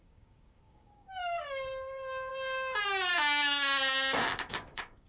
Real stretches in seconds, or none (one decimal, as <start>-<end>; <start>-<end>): 2.3-4.5